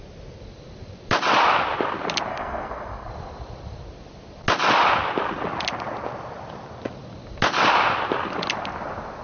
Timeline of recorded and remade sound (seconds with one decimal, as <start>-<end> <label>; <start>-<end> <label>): 0.0-2.3 recorded; 2.3-3.1 remade; 3.1-9.2 recorded